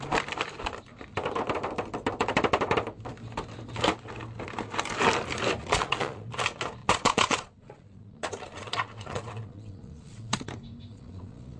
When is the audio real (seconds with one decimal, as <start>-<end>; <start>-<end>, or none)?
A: 0.0-5.6; 6.3-6.8; 10.4-10.9